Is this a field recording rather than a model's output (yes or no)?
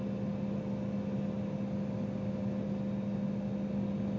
yes